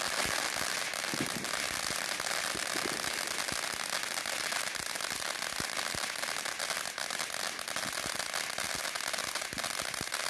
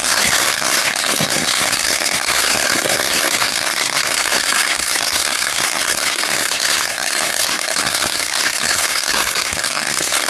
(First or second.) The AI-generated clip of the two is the second